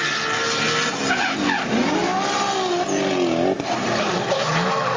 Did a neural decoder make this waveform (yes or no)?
no